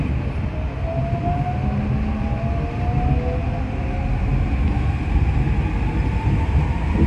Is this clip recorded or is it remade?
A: recorded